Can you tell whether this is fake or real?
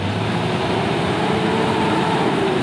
fake